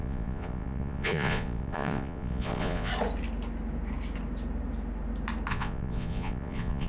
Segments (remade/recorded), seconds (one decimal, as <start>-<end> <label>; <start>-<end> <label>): 0.0-2.9 remade; 2.9-5.5 recorded; 5.5-6.9 remade